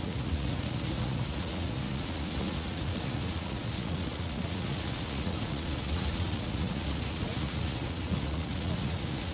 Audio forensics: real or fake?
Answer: fake